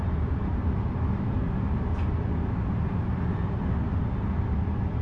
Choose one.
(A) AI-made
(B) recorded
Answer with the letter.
B